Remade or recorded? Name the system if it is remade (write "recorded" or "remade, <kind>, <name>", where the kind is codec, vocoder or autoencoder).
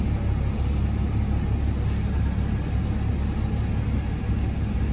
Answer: recorded